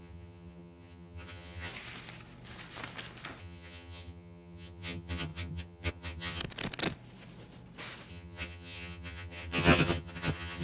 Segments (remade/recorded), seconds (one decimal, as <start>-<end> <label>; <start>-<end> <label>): 0.0-1.7 remade; 1.7-3.4 recorded; 3.4-6.4 remade; 6.4-8.1 recorded; 8.1-10.6 remade

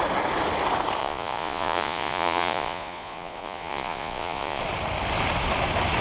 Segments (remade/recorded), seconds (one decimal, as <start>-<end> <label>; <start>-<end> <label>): 0.0-1.0 recorded; 1.0-4.6 remade; 4.6-6.0 recorded

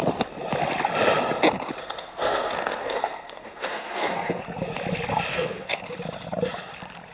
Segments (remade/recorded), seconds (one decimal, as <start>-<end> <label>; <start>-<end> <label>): 0.0-1.8 recorded; 1.8-4.4 remade; 4.4-5.3 recorded; 5.3-5.8 remade; 5.8-7.1 recorded

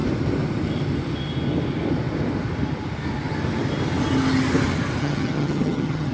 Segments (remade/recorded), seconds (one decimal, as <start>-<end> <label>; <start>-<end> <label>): 0.0-5.0 recorded; 5.0-6.1 remade

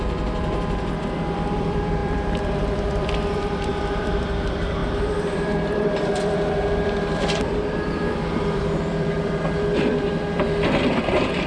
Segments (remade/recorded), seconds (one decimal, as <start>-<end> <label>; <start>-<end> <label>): 0.0-11.5 remade